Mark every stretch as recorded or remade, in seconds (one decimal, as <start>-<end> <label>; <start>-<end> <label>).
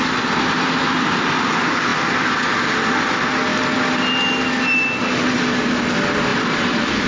0.0-6.3 recorded; 6.3-7.1 remade